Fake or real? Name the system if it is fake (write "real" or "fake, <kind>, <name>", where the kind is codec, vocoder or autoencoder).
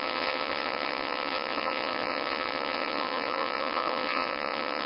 fake, vocoder, WaveNeXt